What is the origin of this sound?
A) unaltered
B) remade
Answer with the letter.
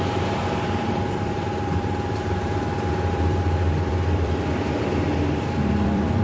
B